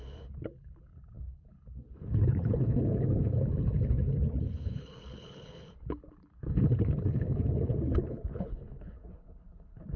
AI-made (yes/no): yes